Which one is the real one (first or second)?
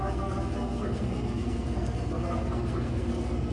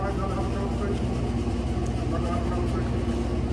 second